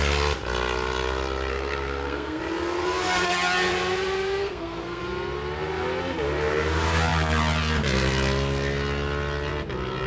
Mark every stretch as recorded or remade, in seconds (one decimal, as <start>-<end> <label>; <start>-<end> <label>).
0.0-1.5 recorded; 1.5-2.4 remade; 2.4-4.4 recorded; 4.4-5.0 remade; 5.0-10.1 recorded